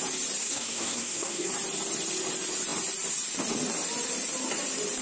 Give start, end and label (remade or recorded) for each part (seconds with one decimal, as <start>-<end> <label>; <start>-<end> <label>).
0.0-0.4 recorded; 0.4-1.5 remade; 1.5-5.0 recorded